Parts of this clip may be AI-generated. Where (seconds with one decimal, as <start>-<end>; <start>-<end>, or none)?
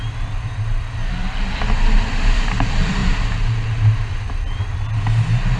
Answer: none